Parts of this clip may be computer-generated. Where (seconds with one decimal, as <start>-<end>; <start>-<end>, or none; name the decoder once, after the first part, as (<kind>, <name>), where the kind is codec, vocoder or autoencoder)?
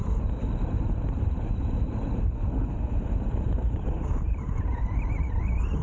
0.0-5.8 (vocoder, BigVGAN v2)